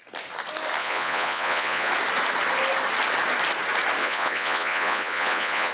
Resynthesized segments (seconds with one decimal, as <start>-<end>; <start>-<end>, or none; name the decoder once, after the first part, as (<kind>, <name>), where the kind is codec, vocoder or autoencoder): 0.8-1.9 (vocoder, Vocos); 4.0-5.7